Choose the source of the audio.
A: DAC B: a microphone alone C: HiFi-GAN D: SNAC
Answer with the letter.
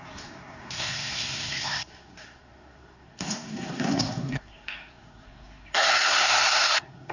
D